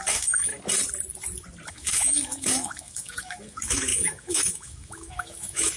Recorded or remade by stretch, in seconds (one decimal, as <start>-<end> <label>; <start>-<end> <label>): 0.0-0.5 remade; 0.5-1.7 recorded; 1.7-5.8 remade